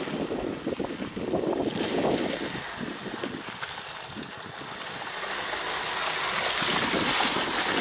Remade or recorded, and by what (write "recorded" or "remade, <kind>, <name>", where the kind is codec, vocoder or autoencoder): recorded